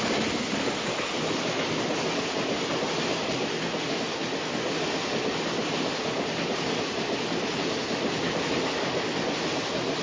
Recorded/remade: recorded